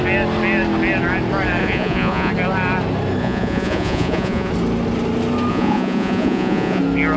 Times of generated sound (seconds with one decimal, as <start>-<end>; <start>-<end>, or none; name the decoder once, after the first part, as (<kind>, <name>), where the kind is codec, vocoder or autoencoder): 1.6-2.3 (vocoder, Vocos); 3.2-4.5; 5.5-6.8